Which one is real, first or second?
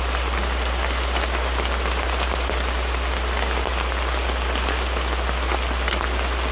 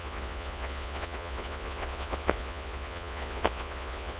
first